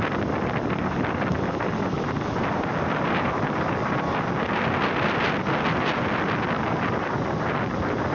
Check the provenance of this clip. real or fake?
real